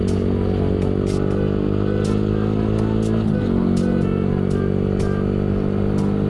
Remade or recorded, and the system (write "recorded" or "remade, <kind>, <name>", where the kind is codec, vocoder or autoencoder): recorded